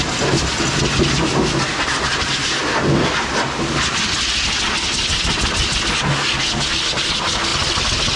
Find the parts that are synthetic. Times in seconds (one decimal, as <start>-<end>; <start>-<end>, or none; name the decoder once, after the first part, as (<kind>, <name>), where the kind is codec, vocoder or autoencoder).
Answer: none